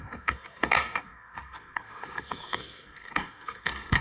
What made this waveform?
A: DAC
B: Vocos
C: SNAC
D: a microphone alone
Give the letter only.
C